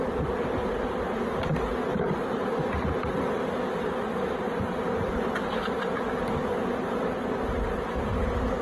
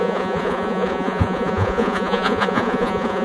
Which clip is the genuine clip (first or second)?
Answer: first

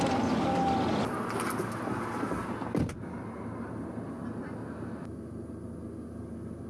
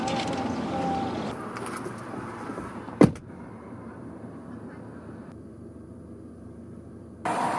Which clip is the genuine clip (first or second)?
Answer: first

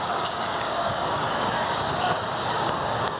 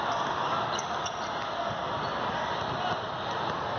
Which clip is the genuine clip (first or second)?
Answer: second